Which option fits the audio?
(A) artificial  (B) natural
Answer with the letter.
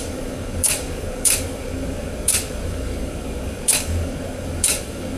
A